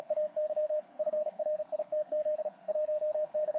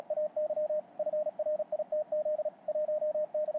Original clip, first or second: second